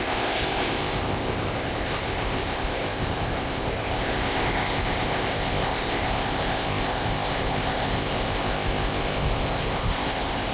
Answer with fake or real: fake